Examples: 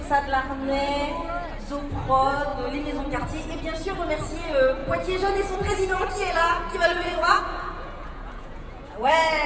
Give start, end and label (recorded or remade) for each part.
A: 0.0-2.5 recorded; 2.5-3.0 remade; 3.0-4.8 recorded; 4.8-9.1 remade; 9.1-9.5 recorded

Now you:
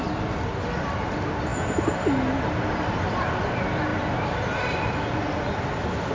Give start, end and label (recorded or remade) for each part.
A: 0.0-6.1 recorded